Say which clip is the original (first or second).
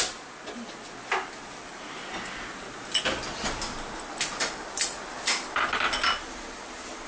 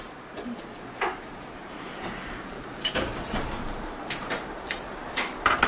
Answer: first